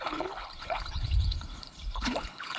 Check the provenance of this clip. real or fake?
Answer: fake